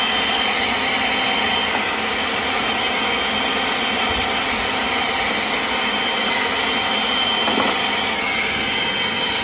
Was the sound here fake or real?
real